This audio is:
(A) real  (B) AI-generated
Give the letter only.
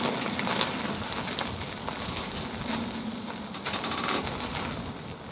A